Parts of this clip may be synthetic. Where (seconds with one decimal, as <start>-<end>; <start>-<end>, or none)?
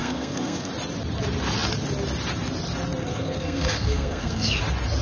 0.0-0.7; 3.0-4.6